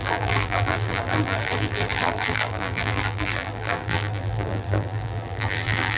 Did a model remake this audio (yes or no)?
yes